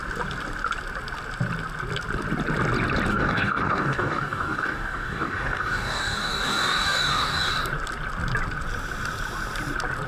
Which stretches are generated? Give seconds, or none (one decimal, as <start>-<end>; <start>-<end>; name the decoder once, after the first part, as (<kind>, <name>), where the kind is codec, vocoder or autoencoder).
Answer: 3.1-7.5 (codec, DAC)